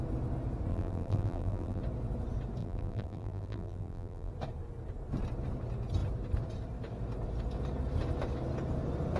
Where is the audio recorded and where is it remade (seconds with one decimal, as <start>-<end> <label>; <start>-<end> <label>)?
0.0-0.7 recorded; 0.7-1.8 remade; 1.8-2.6 recorded; 2.6-4.3 remade; 4.3-9.2 recorded